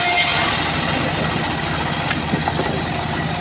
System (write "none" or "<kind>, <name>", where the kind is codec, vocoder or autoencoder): none